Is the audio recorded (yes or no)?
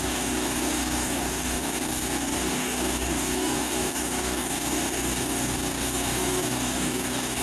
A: no